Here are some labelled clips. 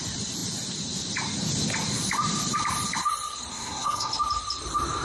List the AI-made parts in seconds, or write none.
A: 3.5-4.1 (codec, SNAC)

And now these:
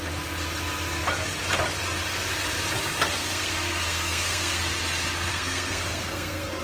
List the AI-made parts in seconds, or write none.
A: 3.2-4.6 (codec, SNAC); 5.3-6.6

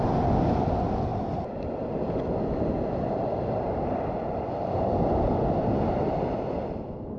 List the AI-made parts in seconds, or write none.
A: none

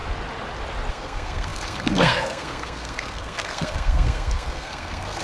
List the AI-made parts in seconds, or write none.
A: 0.9-5.2 (codec, SNAC)

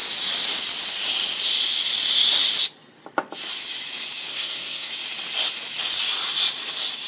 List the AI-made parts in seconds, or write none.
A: 4.3-4.9 (codec, SNAC)

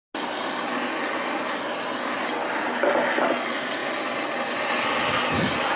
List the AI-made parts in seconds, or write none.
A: none

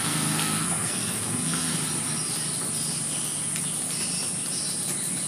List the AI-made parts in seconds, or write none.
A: 0.0-1.7 (codec, SNAC)

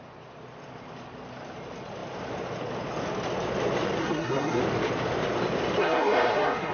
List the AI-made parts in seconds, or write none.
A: 4.0-4.6 (codec, SNAC); 5.8-6.7